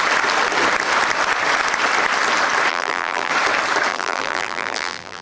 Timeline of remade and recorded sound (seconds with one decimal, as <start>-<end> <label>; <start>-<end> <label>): 0.0-2.7 recorded; 2.7-3.3 remade; 3.3-3.9 recorded; 3.9-5.2 remade